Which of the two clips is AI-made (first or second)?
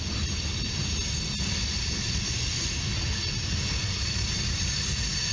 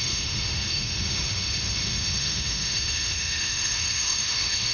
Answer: second